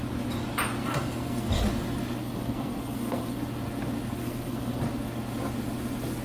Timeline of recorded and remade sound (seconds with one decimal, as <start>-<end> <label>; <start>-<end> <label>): 0.0-0.8 recorded; 0.8-1.6 remade; 1.6-2.2 recorded; 2.2-3.4 remade; 3.4-4.2 recorded; 4.2-4.8 remade; 4.8-6.2 recorded